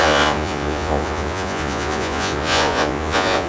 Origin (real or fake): fake